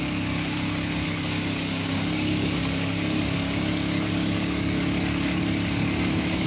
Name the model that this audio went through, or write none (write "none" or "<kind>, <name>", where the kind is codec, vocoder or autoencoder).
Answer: codec, DAC